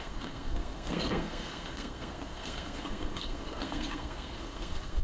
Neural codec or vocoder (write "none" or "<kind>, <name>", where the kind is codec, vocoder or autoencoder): codec, SNAC